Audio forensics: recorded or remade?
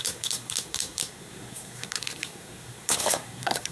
remade